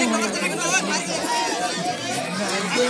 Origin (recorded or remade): recorded